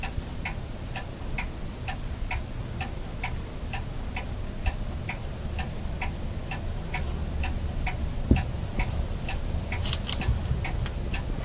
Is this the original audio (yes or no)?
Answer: yes